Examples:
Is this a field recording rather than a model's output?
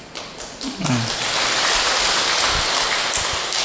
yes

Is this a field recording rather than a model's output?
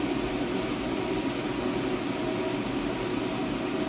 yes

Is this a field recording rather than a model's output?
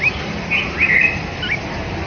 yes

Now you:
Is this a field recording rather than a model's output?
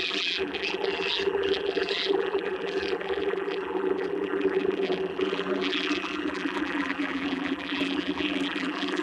no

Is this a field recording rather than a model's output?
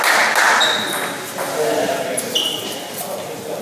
yes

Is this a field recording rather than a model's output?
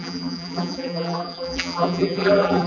no